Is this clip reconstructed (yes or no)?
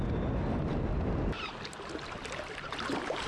no